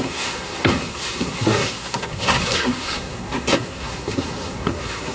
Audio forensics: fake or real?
fake